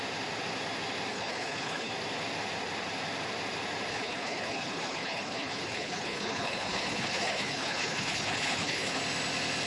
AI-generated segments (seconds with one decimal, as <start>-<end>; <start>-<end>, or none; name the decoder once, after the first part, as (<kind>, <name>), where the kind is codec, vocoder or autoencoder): 1.1-1.9 (codec, HILCodec); 3.9-9.0